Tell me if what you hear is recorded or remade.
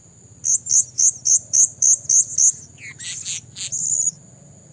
recorded